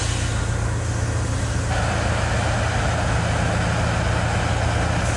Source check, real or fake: real